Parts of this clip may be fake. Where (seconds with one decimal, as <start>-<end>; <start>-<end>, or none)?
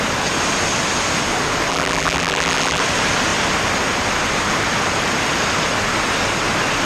1.7-2.8